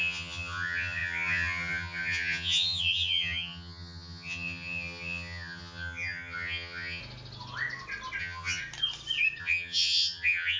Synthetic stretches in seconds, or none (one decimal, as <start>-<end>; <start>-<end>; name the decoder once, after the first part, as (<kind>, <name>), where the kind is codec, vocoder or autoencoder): 0.0-7.0 (vocoder, HiFi-GAN); 8.2-8.6; 9.4-10.6